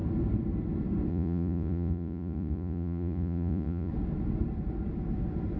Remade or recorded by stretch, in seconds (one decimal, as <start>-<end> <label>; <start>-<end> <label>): 0.0-1.1 recorded; 1.1-3.9 remade; 3.9-5.6 recorded